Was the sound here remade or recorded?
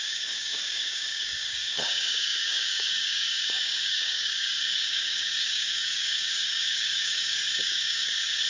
remade